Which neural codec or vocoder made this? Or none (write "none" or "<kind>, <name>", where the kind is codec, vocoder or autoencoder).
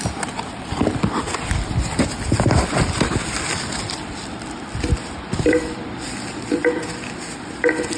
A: none